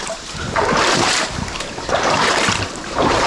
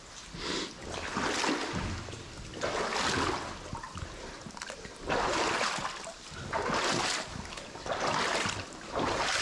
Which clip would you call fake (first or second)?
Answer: first